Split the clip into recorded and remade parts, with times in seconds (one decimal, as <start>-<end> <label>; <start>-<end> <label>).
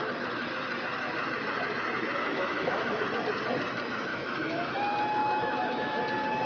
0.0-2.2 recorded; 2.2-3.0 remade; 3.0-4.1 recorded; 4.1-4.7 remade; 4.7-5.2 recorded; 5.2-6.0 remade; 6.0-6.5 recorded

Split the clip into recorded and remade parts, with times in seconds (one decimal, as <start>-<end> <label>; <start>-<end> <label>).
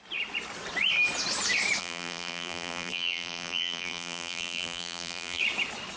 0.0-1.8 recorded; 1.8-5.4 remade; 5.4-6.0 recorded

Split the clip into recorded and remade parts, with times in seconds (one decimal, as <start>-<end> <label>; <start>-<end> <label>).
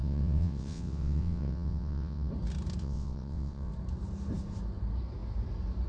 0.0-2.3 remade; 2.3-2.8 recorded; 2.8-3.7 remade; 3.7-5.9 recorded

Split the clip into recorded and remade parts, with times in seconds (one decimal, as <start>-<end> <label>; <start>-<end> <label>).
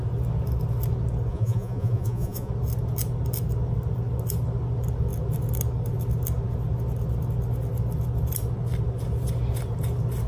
0.0-1.3 recorded; 1.3-2.5 remade; 2.5-10.3 recorded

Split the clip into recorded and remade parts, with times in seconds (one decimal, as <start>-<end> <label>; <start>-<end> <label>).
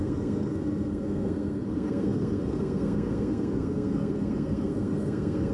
0.0-5.5 remade